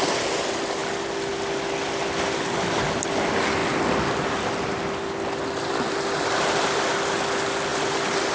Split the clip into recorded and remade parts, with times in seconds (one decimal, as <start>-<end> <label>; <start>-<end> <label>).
0.0-8.3 recorded

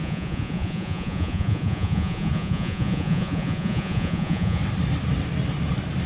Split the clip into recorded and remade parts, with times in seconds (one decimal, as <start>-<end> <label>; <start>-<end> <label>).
0.0-4.6 remade; 4.6-6.1 recorded

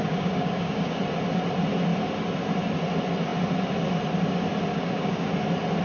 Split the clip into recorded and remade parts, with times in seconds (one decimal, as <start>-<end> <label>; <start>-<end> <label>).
0.0-1.0 remade; 1.0-4.7 recorded; 4.7-5.3 remade; 5.3-5.8 recorded

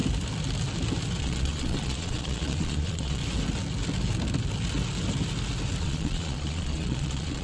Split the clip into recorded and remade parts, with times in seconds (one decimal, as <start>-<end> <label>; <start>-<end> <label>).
0.0-1.2 recorded; 1.2-3.2 remade; 3.2-5.8 recorded; 5.8-7.4 remade

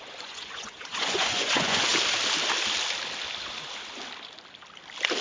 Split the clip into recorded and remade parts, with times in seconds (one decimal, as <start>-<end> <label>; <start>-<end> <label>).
0.0-1.9 remade; 1.9-5.2 recorded

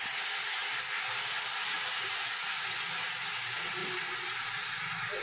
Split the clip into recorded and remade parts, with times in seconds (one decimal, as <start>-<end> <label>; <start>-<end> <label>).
0.0-5.2 recorded

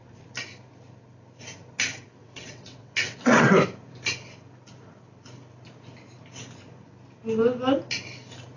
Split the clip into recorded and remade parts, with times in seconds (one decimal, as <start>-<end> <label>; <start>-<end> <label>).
0.0-2.2 recorded; 2.2-3.5 remade; 3.5-8.6 recorded

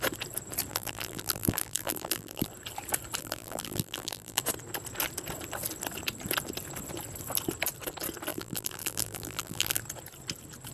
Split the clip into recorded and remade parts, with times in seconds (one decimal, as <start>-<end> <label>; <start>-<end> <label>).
0.0-0.7 recorded; 0.7-2.5 remade; 2.5-3.2 recorded; 3.2-4.4 remade; 4.4-8.3 recorded; 8.3-9.8 remade; 9.8-10.7 recorded